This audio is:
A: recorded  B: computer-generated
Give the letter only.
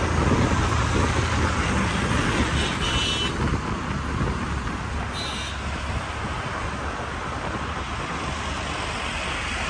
A